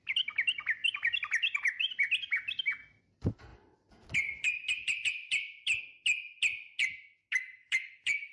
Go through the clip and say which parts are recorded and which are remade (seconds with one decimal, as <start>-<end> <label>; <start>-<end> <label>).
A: 0.0-0.8 recorded; 0.8-1.9 remade; 1.9-3.5 recorded; 3.5-5.8 remade; 5.8-7.6 recorded; 7.6-8.3 remade